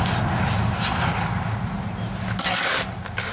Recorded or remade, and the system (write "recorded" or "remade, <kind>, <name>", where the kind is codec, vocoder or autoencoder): recorded